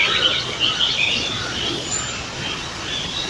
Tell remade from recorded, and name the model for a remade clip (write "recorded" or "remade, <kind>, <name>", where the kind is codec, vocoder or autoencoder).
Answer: remade, vocoder, Vocos